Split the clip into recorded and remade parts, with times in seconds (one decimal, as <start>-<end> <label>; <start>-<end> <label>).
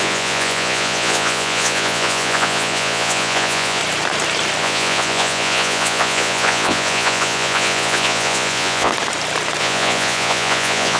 0.0-3.8 remade; 3.8-4.6 recorded; 4.6-8.9 remade; 8.9-9.6 recorded; 9.6-11.0 remade